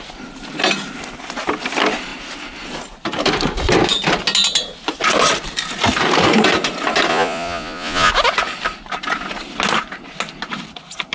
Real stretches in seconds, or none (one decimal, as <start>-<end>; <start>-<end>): 0.0-7.1; 8.1-11.1